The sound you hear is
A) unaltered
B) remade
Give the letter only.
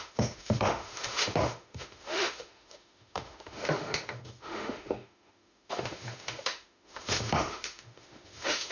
B